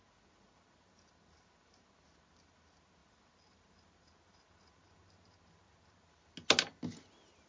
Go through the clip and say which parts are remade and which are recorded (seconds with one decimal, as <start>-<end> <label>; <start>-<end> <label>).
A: 0.0-7.5 recorded